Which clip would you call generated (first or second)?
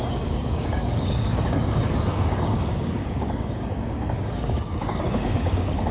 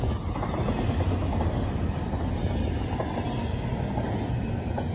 first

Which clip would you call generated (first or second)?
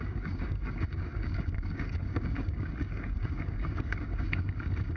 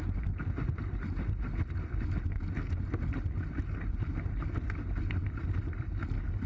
first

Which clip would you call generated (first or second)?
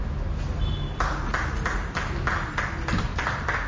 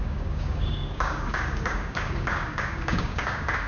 second